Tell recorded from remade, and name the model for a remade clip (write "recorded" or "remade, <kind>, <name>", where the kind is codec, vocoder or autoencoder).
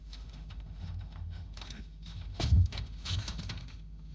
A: remade, autoencoder, DAC-VAE